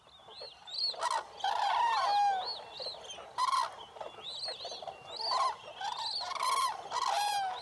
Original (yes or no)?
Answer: yes